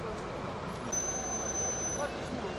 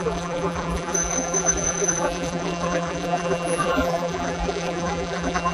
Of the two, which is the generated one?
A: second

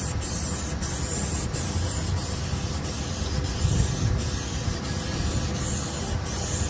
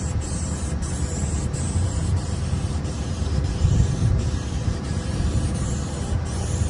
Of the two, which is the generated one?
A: second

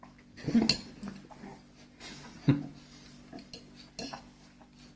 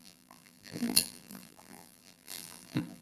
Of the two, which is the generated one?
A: second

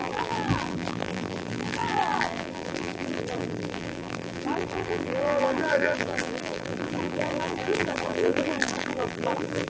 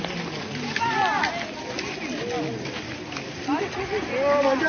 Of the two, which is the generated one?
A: first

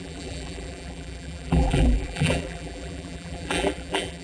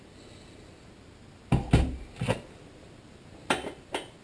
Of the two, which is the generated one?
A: first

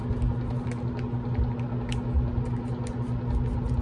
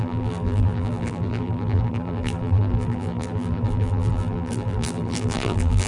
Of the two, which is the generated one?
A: second